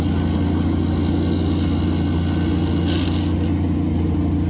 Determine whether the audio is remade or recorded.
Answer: recorded